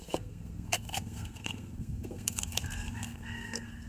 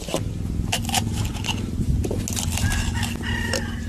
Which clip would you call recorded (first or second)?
second